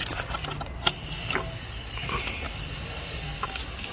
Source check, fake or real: real